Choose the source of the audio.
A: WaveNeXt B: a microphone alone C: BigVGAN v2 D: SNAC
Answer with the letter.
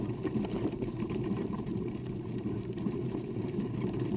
C